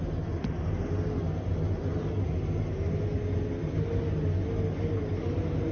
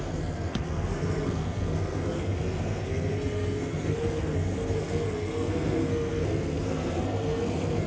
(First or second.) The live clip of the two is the first